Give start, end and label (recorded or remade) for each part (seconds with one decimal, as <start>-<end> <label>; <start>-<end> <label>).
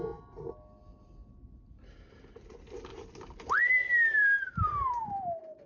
0.0-2.9 recorded; 2.9-3.6 remade; 3.6-4.2 recorded; 4.2-4.9 remade; 4.9-5.7 recorded